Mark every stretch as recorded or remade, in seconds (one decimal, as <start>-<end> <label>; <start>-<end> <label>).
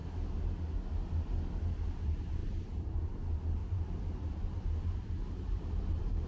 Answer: 0.0-1.6 recorded; 1.6-6.3 remade